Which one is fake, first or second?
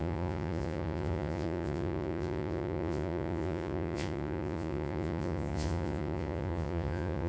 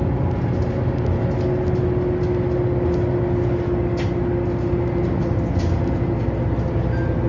first